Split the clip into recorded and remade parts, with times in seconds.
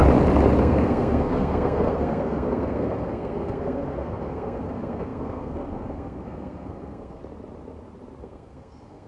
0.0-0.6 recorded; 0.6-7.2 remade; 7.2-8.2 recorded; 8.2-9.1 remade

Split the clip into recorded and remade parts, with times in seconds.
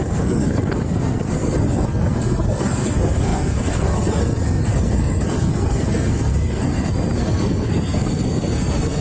0.0-9.0 remade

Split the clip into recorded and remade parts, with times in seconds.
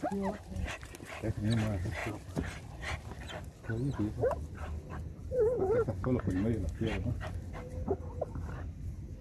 0.0-9.2 recorded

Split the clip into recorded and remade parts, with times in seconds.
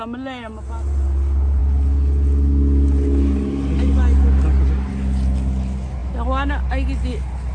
0.0-7.5 recorded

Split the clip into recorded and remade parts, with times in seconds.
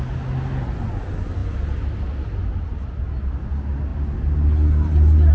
0.0-5.3 recorded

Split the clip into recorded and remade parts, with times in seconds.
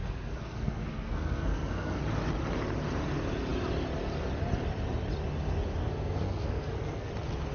0.0-2.0 remade; 2.0-5.8 recorded; 5.8-7.1 remade; 7.1-7.5 recorded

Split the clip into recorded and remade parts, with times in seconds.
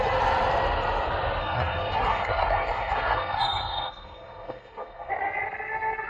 0.0-1.4 recorded; 1.4-5.1 remade; 5.1-6.1 recorded